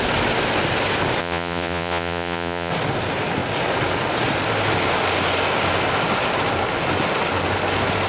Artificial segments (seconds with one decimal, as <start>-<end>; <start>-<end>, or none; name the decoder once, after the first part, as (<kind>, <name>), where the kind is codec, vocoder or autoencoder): 1.2-2.7 (vocoder, Vocos)